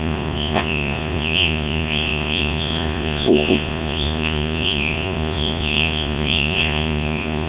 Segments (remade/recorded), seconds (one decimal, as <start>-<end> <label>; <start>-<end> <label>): 0.0-7.5 remade